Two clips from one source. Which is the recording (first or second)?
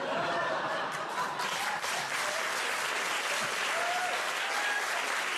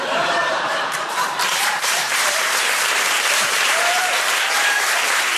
first